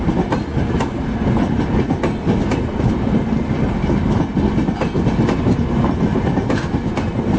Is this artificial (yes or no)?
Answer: no